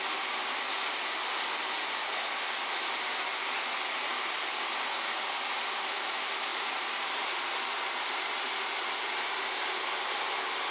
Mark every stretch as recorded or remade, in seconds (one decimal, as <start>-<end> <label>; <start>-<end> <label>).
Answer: 0.0-6.5 recorded; 6.5-7.4 remade; 7.4-10.7 recorded